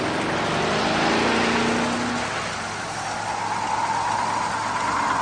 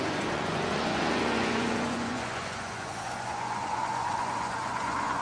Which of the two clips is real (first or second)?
first